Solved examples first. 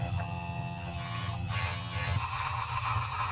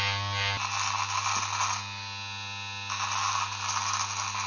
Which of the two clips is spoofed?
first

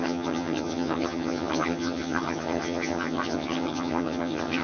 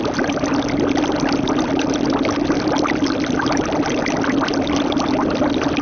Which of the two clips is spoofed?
first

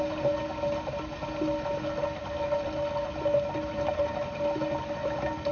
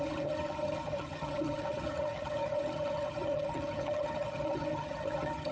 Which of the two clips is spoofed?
second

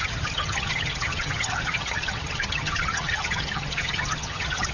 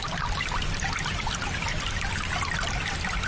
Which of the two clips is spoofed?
first